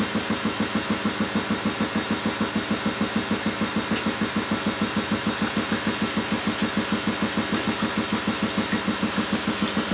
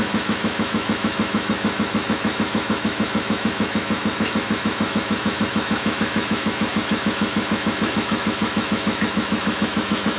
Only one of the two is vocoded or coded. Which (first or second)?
second